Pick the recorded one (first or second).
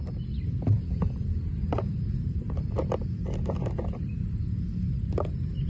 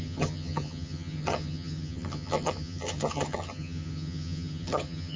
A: first